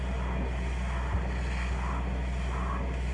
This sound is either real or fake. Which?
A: real